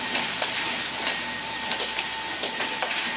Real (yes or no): no